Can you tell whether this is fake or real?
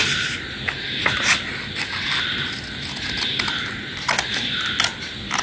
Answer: real